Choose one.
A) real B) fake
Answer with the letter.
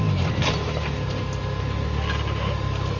A